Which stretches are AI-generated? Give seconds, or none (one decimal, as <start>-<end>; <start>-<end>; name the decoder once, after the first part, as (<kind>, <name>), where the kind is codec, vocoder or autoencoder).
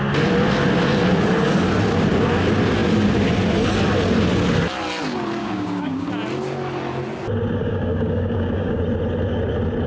5.4-6.1 (codec, DAC); 7.6-8.8